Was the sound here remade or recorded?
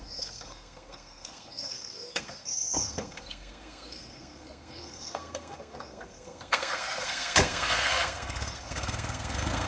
remade